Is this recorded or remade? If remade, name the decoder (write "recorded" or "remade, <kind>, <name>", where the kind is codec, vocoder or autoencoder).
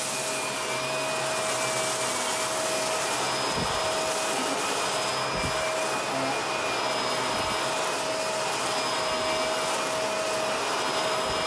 recorded